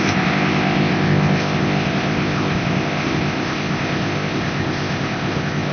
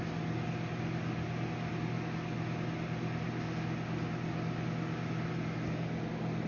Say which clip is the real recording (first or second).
second